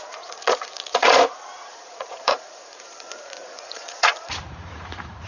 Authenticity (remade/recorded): remade